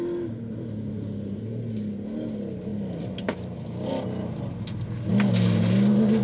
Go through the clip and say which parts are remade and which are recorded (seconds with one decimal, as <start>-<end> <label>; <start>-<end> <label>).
0.0-6.2 recorded